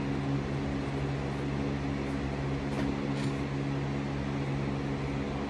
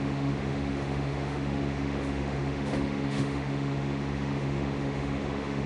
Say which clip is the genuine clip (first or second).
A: first